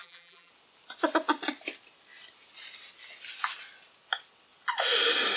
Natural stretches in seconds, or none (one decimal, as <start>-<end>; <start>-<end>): 0.5-5.4